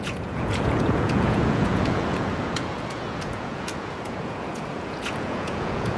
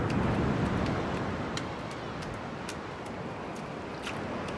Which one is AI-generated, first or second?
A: first